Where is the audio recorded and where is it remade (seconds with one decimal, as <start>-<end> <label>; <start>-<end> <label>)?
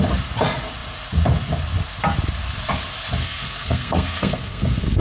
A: 0.0-3.2 recorded; 3.2-5.0 remade